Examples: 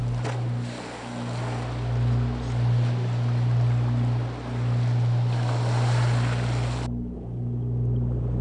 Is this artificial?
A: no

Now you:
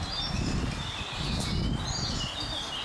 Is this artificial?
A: no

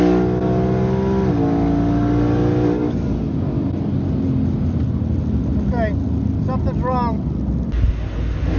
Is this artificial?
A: no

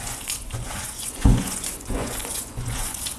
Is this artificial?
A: yes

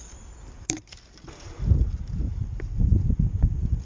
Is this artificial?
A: no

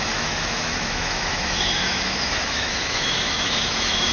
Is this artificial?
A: yes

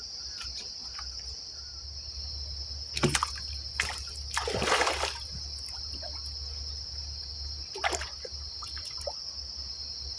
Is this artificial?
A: no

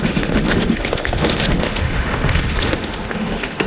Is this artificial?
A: yes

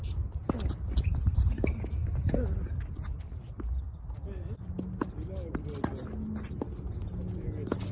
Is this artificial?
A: no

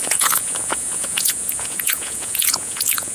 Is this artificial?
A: yes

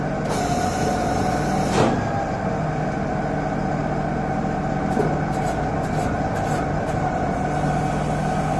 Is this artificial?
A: no